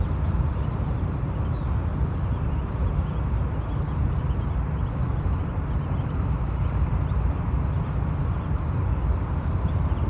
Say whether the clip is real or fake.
real